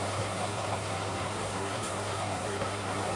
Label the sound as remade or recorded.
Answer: remade